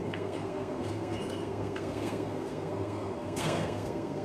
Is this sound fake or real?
fake